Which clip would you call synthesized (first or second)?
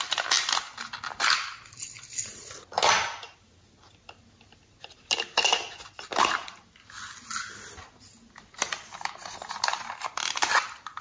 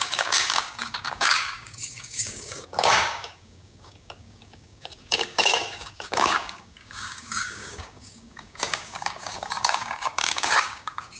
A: second